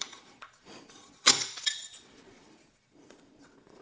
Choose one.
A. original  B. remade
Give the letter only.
B